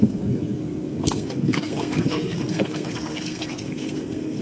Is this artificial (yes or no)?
yes